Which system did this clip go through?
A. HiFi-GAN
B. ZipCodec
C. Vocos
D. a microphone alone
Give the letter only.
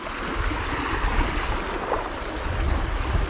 D